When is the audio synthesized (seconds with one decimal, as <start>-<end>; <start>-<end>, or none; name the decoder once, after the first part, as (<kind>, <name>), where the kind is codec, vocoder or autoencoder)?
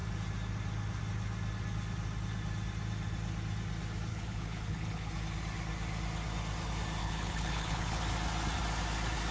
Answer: 4.1-5.1 (codec, HILCodec); 7.0-8.0